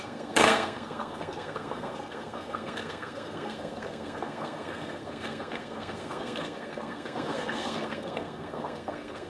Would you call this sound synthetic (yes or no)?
yes